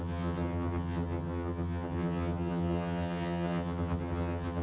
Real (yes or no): no